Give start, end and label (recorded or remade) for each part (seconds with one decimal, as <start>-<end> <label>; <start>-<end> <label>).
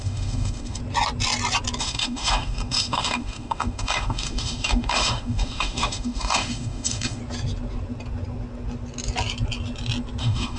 0.0-0.8 remade; 0.8-1.8 recorded; 1.8-7.2 remade; 7.2-10.2 recorded; 10.2-10.6 remade